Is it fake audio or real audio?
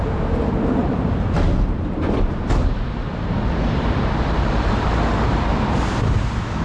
fake